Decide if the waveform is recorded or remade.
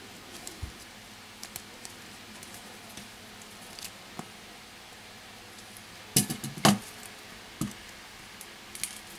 recorded